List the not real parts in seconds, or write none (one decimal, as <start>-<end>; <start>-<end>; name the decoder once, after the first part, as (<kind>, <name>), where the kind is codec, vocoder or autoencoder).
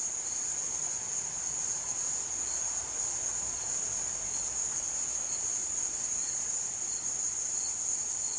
0.0-3.6 (vocoder, Vocos); 4.5-8.4